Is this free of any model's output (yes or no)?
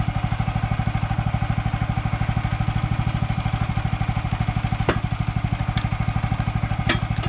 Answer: yes